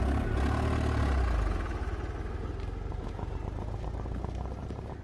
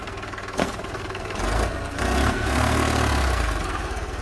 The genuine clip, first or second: first